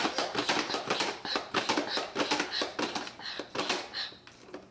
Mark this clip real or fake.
real